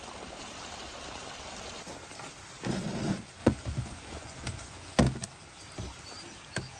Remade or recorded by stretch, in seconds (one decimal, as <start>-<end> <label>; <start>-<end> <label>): 0.0-3.4 recorded; 3.4-5.0 remade; 5.0-6.8 recorded